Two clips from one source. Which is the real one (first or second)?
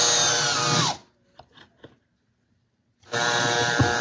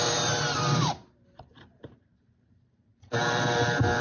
first